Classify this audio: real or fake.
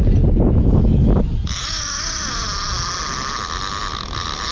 real